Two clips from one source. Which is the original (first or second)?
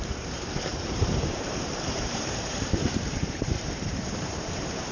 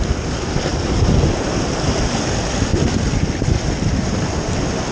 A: second